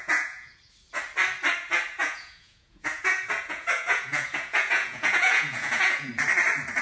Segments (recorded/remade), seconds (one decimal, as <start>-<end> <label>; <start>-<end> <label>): 0.0-0.6 remade; 0.6-2.0 recorded; 2.0-6.1 remade; 6.1-6.8 recorded